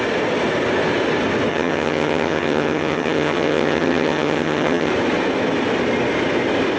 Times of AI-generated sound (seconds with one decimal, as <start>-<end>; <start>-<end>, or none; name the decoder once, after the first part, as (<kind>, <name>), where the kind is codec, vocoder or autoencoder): 1.5-4.9 (vocoder, HiFi-GAN)